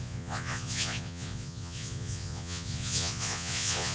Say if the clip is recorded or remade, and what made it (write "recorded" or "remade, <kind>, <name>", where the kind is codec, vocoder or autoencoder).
remade, vocoder, Vocos